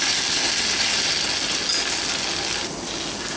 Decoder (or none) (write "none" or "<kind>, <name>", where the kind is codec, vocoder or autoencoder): none